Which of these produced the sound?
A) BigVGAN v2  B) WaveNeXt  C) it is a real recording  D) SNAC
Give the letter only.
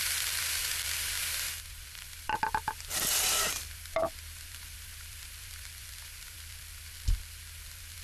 A